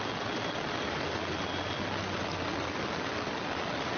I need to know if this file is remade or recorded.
recorded